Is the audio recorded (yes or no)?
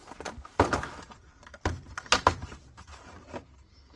yes